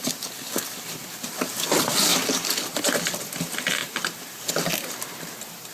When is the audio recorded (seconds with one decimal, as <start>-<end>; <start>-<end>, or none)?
0.0-3.8; 4.5-5.7